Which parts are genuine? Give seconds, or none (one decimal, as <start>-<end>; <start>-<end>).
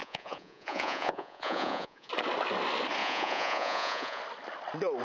2.1-3.0; 4.2-5.0